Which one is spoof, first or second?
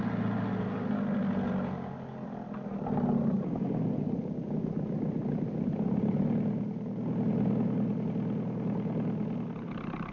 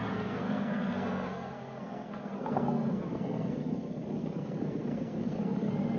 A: second